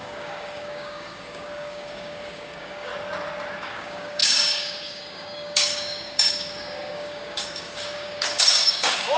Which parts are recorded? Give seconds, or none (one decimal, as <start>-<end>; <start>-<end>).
2.9-3.6